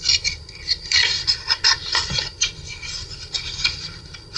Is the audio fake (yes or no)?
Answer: no